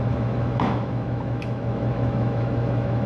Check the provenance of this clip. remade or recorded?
remade